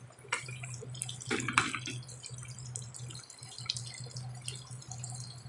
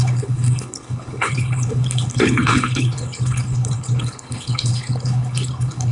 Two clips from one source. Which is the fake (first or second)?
second